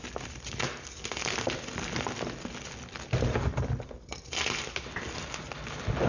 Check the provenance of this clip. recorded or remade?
recorded